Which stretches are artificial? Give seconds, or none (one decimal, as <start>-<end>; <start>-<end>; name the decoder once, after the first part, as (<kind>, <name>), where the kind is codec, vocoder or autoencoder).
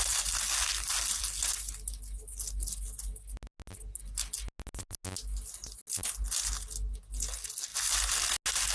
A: 0.7-1.2 (vocoder, BigVGAN v2); 7.7-8.2